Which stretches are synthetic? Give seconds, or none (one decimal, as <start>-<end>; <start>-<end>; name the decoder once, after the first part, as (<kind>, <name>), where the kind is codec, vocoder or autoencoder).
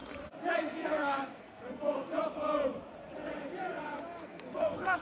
0.5-2.1 (codec, SNAC); 4.2-5.0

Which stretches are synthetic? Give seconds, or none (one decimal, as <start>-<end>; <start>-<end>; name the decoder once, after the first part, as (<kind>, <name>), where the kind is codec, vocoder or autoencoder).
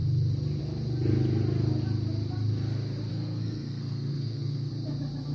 3.1-4.7 (codec, SNAC)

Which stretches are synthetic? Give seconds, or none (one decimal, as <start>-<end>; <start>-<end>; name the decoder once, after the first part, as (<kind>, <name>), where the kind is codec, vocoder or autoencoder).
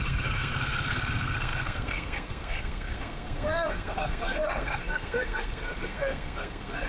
0.0-6.9 (codec, SNAC)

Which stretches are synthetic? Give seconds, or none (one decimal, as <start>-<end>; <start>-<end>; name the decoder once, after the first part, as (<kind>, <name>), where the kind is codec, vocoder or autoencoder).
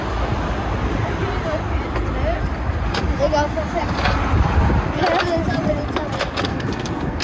6.5-7.2 (codec, SNAC)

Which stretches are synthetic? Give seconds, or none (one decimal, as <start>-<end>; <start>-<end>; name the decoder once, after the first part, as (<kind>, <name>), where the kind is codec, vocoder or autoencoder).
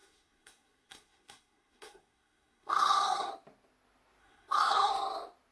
0.0-3.3 (codec, SNAC); 4.2-4.9